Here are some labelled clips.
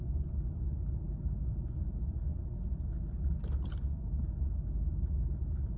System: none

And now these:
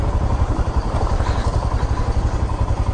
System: vocoder, BigVGAN v2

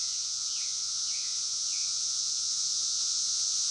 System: vocoder, Vocos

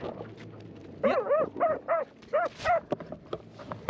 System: none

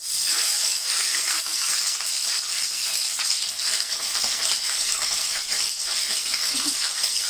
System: codec, SNAC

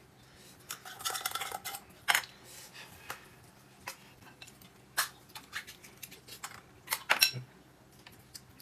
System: none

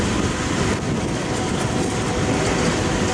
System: none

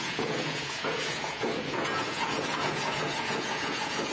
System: vocoder, Vocos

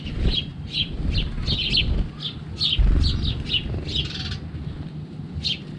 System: none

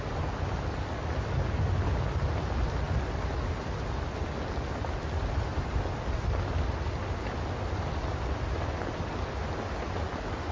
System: none